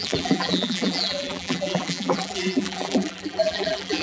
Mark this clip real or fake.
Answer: fake